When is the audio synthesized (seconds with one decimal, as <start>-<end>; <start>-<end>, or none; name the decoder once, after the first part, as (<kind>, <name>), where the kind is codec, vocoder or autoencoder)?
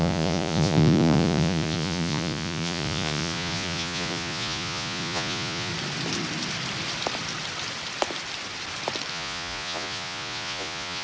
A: 0.0-5.7 (vocoder, Vocos); 9.1-11.0